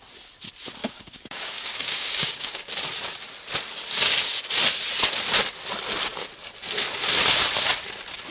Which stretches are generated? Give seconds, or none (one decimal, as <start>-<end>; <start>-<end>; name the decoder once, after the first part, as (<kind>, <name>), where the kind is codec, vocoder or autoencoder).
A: 0.8-2.7 (codec, DAC)